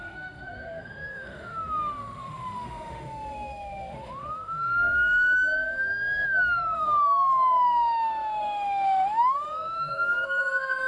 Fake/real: fake